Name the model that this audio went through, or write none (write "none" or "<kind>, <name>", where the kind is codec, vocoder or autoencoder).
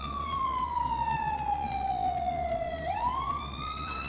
vocoder, Vocos